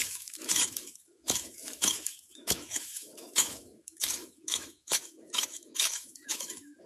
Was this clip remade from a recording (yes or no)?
yes